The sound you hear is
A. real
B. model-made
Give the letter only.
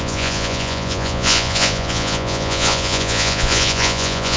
B